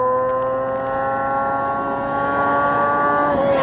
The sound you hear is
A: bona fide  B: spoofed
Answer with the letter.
A